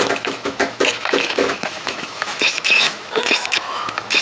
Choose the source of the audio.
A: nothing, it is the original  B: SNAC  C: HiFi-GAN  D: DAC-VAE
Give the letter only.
D